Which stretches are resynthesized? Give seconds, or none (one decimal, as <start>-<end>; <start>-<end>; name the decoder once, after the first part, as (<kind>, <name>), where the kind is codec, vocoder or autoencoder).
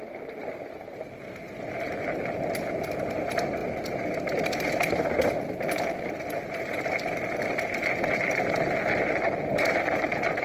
none